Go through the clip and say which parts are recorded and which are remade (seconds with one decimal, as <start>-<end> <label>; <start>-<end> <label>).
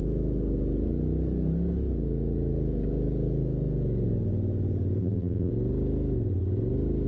0.0-5.0 recorded; 5.0-5.5 remade; 5.5-7.1 recorded